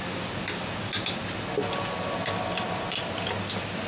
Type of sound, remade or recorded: recorded